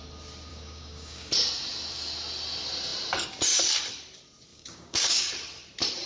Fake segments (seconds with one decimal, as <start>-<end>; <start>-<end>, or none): 0.5-1.3; 4.5-5.3